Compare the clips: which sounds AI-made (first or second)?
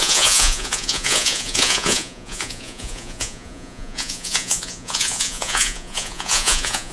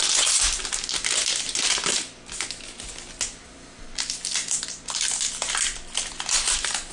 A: first